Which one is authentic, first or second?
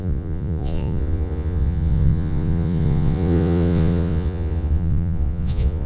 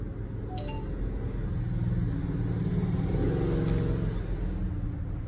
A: second